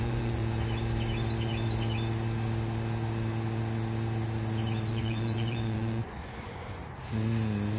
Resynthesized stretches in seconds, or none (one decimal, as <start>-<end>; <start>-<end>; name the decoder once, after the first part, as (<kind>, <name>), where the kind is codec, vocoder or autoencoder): 0.0-0.4 (vocoder, Vocos); 4.9-6.8